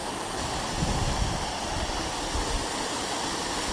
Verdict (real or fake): real